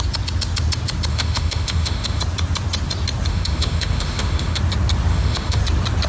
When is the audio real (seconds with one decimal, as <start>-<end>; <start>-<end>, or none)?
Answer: 0.0-1.1; 2.2-3.3; 4.6-5.1; 5.6-6.1